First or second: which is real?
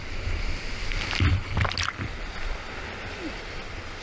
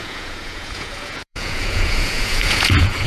first